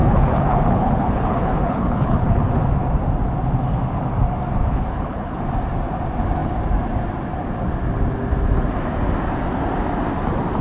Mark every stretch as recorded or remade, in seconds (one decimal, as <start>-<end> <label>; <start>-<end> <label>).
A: 0.0-2.5 remade; 2.5-4.6 recorded; 4.6-5.4 remade; 5.4-10.6 recorded